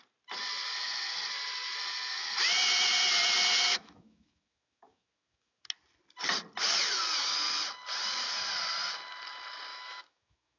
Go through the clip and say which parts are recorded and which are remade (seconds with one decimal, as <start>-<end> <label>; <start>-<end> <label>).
0.0-3.7 recorded; 3.7-5.7 remade; 5.7-9.7 recorded; 9.7-10.6 remade